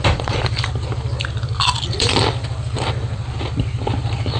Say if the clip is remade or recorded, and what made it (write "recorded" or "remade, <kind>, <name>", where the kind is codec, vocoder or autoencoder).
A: remade, vocoder, BigVGAN v2